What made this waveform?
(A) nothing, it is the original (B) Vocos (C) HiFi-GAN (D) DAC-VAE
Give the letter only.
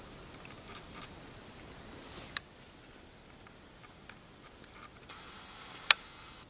A